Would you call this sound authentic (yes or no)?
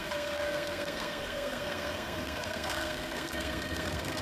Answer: no